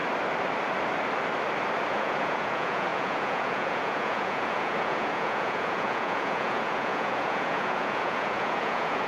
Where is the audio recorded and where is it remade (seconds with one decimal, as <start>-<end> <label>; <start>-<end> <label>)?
0.0-1.9 recorded; 1.9-9.1 remade